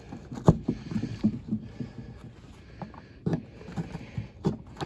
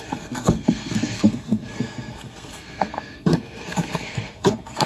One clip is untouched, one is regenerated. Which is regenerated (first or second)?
second